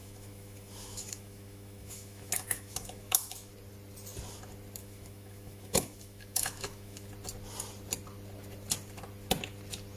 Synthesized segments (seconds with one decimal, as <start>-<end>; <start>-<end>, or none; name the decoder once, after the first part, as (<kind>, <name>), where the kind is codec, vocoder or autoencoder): 0.0-3.5 (autoencoder, DAC-VAE); 4.8-7.1